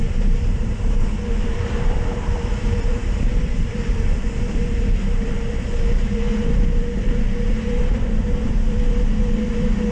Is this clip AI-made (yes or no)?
yes